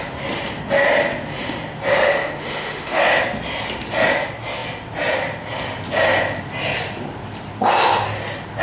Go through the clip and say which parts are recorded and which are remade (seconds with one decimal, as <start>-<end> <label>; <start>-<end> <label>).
0.0-1.9 recorded; 1.9-3.0 remade; 3.0-8.6 recorded